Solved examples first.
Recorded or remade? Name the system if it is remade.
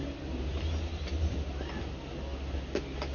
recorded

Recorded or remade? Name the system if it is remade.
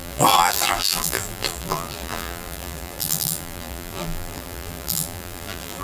remade, vocoder, BigVGAN v2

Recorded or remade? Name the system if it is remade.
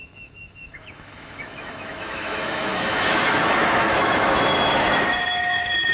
remade, autoencoder, DAC-VAE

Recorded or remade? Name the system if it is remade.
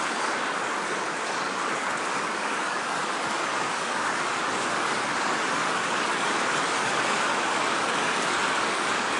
remade, codec, DAC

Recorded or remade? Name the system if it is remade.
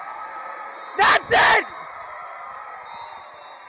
recorded